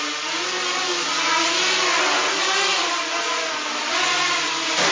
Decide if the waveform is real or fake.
real